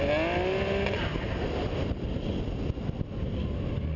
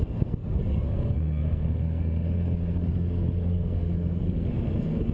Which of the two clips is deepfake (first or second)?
second